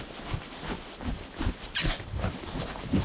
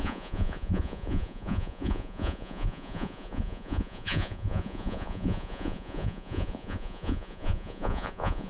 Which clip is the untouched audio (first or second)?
first